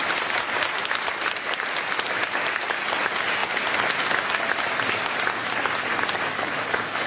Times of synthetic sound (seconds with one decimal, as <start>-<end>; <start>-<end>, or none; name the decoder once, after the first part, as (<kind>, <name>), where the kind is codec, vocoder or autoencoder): none